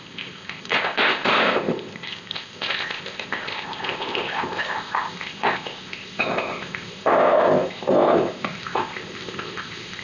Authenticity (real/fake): fake